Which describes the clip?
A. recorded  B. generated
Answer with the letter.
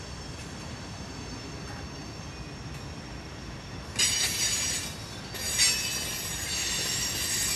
A